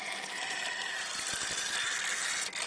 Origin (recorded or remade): recorded